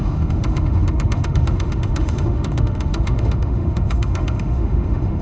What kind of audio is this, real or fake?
fake